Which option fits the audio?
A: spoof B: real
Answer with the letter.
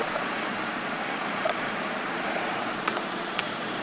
A